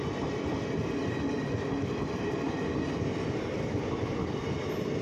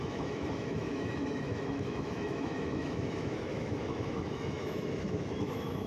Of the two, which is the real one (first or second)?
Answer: first